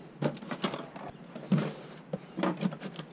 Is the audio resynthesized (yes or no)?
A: no